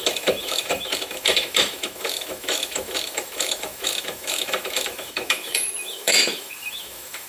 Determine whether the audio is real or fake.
fake